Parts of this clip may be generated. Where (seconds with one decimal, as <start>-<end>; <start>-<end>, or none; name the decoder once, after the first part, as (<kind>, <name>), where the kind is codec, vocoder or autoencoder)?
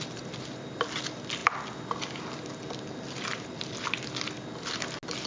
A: none